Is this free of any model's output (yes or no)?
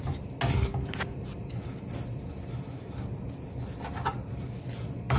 yes